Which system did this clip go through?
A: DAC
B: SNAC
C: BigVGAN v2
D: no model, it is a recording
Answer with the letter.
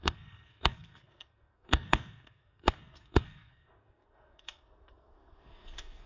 B